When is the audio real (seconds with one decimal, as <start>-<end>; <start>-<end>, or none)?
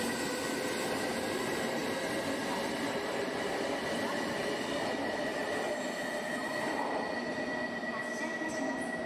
0.0-9.1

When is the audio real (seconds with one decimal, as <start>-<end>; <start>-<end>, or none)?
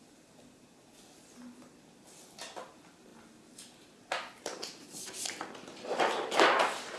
0.0-7.0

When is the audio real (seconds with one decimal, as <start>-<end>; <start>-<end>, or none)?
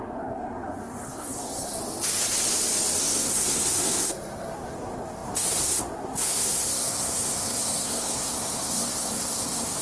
1.8-3.0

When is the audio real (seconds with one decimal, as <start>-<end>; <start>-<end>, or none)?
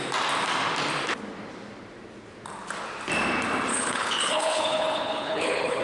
0.0-3.7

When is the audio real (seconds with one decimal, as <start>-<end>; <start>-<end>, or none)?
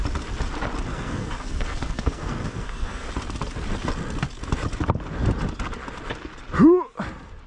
0.0-0.9; 3.1-7.5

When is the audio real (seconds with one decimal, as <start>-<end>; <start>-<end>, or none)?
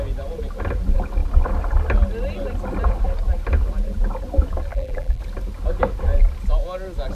0.0-4.7; 5.2-7.1